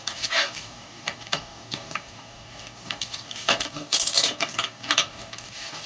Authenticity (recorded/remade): remade